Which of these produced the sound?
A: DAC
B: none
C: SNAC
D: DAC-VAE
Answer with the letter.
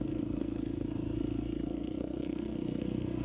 C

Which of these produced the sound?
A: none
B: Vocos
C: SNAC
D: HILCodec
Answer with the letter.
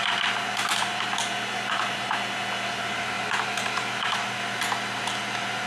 A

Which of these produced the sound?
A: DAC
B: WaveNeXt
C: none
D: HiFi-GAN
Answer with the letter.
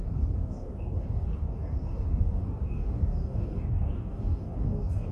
A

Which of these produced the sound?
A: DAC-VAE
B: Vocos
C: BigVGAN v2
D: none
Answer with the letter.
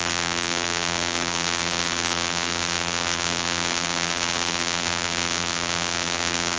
C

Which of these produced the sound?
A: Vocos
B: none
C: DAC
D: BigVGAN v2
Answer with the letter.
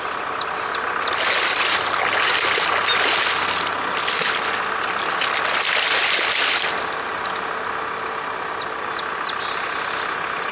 B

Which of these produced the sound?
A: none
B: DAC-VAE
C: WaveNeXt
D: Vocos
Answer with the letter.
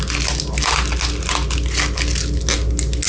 A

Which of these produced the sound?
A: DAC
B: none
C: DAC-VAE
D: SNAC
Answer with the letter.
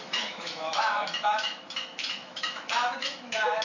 C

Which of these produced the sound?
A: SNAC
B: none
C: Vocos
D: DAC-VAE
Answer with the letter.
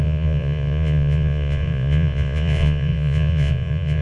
C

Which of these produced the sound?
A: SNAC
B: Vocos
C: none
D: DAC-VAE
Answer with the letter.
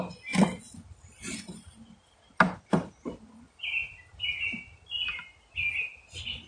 C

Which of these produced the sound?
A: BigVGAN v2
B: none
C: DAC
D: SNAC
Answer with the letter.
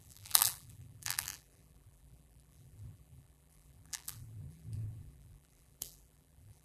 A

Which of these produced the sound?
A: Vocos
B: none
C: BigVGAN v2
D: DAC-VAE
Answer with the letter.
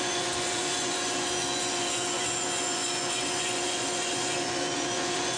A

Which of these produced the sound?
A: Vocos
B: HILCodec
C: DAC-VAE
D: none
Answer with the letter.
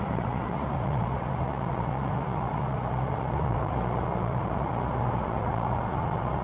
A